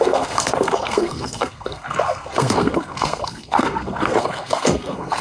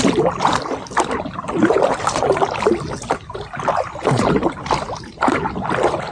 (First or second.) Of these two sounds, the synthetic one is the first